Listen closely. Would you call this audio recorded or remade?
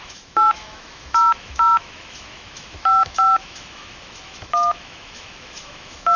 remade